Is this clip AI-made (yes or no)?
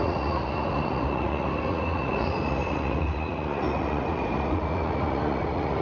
yes